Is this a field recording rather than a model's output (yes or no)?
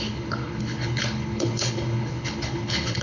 no